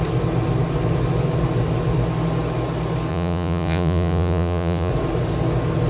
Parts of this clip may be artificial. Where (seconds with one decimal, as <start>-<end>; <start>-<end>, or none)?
3.1-4.9